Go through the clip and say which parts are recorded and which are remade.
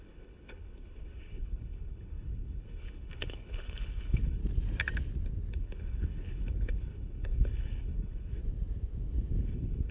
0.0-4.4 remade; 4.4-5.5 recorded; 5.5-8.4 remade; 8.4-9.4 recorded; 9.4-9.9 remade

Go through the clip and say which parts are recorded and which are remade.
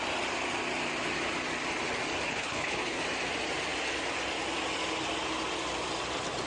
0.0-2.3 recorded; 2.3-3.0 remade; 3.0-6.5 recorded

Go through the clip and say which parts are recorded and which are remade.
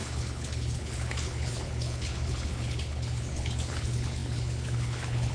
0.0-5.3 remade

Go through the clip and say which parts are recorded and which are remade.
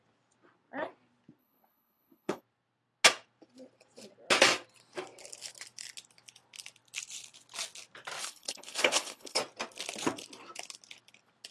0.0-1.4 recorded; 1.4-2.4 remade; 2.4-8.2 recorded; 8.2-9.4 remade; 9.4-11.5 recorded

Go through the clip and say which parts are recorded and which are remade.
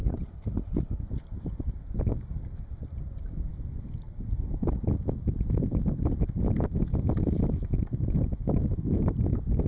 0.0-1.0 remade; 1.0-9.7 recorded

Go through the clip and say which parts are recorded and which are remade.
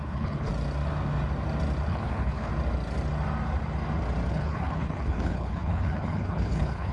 0.0-0.5 remade; 0.5-1.9 recorded; 1.9-2.5 remade; 2.5-4.3 recorded; 4.3-6.9 remade